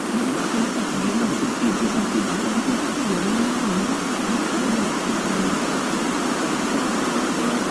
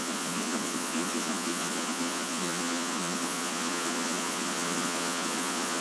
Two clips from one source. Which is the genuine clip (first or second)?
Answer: first